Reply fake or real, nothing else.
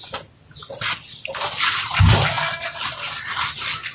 real